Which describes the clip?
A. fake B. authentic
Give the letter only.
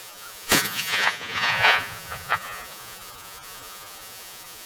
A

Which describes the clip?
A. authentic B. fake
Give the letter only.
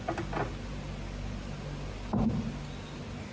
A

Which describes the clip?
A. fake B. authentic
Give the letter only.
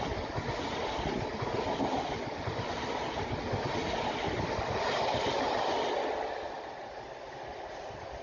B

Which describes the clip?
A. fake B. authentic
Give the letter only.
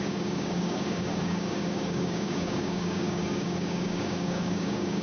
A